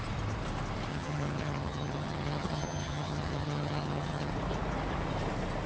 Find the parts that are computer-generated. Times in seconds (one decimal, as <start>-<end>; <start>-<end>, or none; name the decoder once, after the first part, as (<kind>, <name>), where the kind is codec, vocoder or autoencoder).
0.9-4.3 (vocoder, HiFi-GAN)